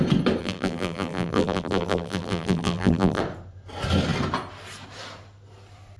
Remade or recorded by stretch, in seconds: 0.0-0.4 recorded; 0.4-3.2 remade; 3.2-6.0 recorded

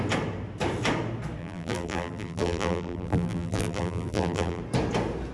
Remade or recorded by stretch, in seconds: 0.0-1.4 recorded; 1.4-4.6 remade; 4.6-5.3 recorded

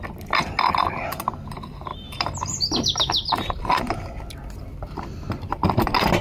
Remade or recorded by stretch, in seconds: 0.0-1.9 recorded; 1.9-3.8 remade; 3.8-6.2 recorded

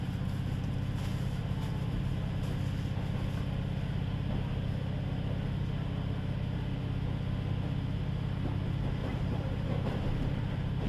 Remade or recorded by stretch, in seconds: 0.0-1.1 recorded; 1.1-2.1 remade; 2.1-9.0 recorded; 9.0-10.5 remade; 10.5-10.9 recorded

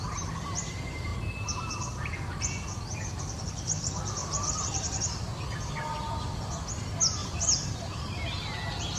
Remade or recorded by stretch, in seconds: 0.0-7.2 recorded; 7.2-7.8 remade; 7.8-9.0 recorded

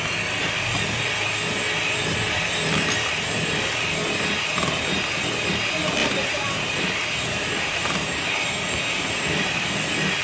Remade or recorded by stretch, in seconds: 0.0-6.0 recorded; 6.0-8.2 remade; 8.2-10.2 recorded